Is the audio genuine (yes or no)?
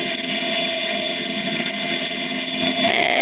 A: no